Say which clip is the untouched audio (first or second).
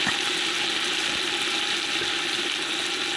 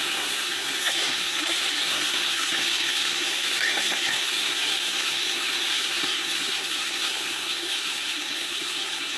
first